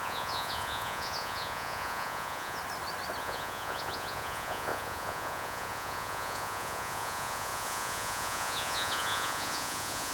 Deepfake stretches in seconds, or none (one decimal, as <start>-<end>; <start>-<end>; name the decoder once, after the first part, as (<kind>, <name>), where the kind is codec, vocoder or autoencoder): 0.0-2.6 (vocoder, Vocos); 3.2-10.1